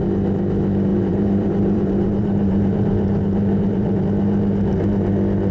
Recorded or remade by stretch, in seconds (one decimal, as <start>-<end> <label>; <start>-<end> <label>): 0.0-0.9 recorded; 0.9-4.0 remade; 4.0-5.5 recorded